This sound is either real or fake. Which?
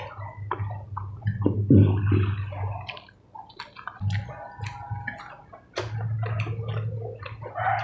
real